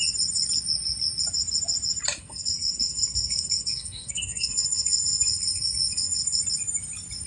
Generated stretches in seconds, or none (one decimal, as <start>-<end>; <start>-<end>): 2.2-6.4